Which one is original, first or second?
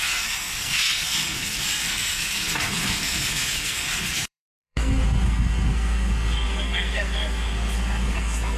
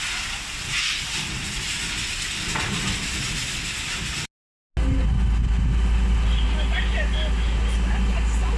second